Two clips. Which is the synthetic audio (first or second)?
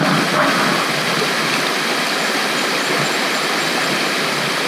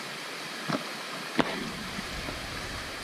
second